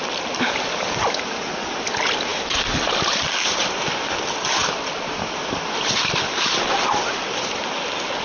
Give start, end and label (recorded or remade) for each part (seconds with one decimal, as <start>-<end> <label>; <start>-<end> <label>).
0.0-8.2 recorded